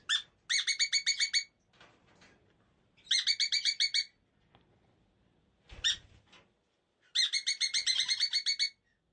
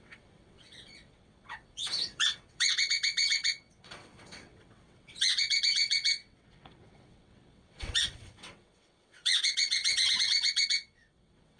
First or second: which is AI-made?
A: second